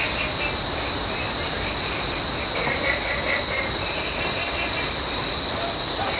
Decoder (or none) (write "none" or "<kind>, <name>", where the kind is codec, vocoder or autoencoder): none